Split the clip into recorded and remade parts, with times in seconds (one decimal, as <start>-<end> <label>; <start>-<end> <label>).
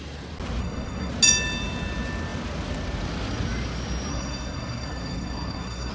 0.0-0.6 recorded; 0.6-1.1 remade; 1.1-4.1 recorded; 4.1-5.9 remade